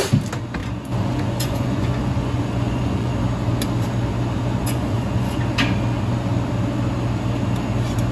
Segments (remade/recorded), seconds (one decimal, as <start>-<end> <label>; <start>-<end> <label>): 0.0-0.6 recorded; 0.6-3.1 remade; 3.1-4.6 recorded; 4.6-5.4 remade; 5.4-8.1 recorded